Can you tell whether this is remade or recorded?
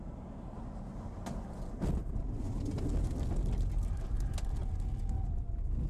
recorded